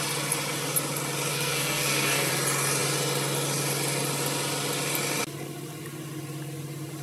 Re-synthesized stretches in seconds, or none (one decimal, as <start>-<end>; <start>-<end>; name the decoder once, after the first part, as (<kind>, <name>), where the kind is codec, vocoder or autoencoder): 1.3-2.3 (codec, SNAC)